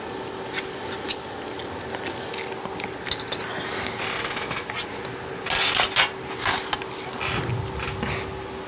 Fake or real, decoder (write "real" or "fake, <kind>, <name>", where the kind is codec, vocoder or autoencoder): real